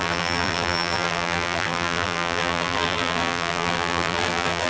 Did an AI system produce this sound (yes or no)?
yes